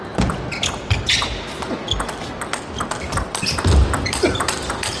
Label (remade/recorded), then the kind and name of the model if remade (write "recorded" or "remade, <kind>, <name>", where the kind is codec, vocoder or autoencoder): recorded